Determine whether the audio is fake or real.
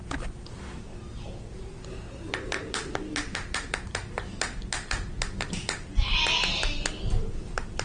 real